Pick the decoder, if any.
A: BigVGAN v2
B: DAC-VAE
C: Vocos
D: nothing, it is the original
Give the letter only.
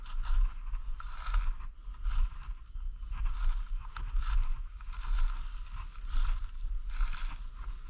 D